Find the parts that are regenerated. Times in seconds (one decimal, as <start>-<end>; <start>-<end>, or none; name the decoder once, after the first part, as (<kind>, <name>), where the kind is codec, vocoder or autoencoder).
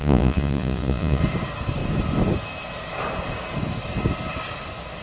0.0-1.2 (vocoder, Vocos)